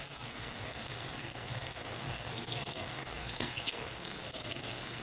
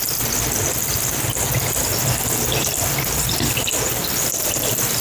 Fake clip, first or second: first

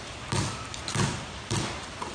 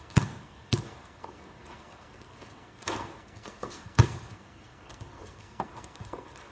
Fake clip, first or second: second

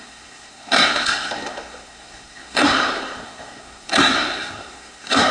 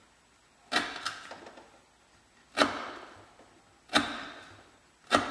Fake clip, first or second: first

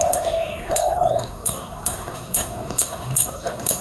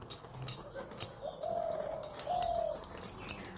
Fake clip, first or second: first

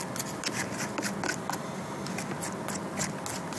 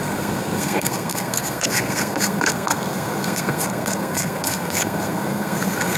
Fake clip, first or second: second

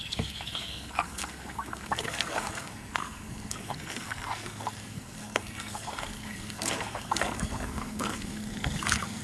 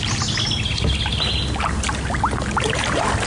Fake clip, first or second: first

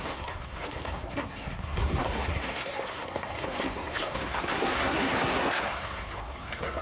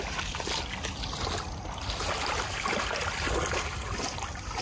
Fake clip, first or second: first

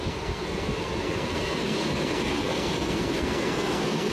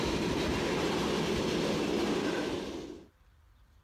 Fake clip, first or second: first